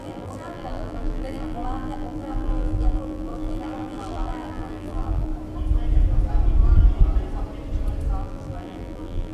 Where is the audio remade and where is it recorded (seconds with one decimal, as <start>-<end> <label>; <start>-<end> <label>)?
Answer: 0.0-5.3 remade; 5.3-8.2 recorded; 8.2-9.3 remade

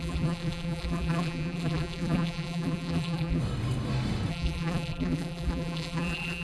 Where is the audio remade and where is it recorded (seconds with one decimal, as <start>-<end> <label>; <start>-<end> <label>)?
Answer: 0.0-3.4 remade; 3.4-4.3 recorded; 4.3-6.4 remade

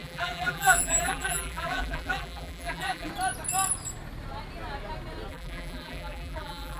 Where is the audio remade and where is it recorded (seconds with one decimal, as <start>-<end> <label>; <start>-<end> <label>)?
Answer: 0.0-3.1 remade; 3.1-5.3 recorded; 5.3-6.8 remade

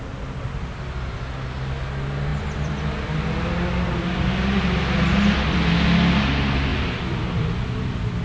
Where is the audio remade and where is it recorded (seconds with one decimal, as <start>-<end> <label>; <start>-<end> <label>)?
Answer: 0.0-2.3 recorded; 2.3-3.2 remade; 3.2-6.7 recorded; 6.7-8.2 remade

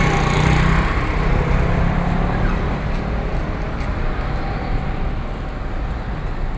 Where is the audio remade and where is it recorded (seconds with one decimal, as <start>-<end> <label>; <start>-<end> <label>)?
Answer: 0.0-3.3 recorded; 3.3-4.4 remade; 4.4-6.6 recorded

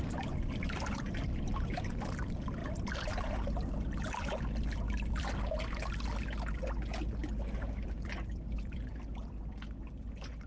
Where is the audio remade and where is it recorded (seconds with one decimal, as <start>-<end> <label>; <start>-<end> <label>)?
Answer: 0.0-2.6 recorded; 2.6-5.6 remade; 5.6-7.2 recorded; 7.2-8.9 remade; 8.9-10.5 recorded

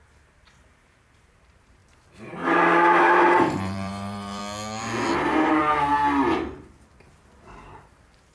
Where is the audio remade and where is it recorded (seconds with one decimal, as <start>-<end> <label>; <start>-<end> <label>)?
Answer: 0.0-4.4 remade; 4.4-5.5 recorded; 5.5-6.0 remade; 6.0-7.4 recorded; 7.4-8.3 remade